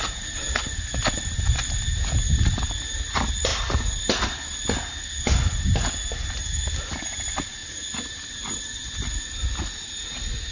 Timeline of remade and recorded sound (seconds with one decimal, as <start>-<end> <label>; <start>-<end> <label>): 0.0-10.5 recorded